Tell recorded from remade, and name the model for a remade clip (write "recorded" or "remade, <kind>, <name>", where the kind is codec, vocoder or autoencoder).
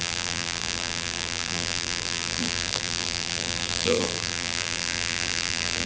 remade, vocoder, BigVGAN v2